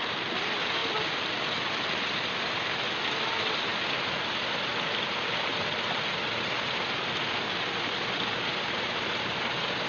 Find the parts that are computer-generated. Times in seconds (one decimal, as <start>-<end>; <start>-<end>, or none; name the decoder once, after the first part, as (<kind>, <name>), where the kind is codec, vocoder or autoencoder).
none